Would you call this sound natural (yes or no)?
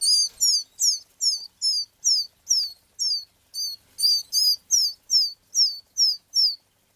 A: yes